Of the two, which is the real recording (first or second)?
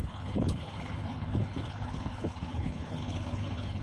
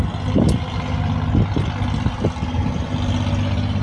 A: second